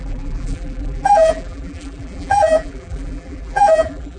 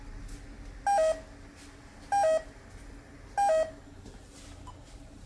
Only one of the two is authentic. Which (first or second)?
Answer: second